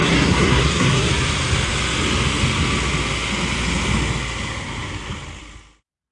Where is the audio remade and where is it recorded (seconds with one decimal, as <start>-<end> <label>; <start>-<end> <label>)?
0.0-1.1 remade; 1.1-6.1 recorded